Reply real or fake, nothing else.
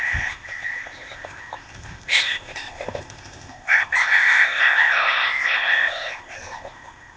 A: fake